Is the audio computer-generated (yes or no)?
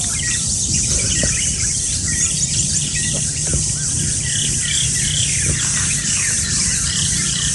yes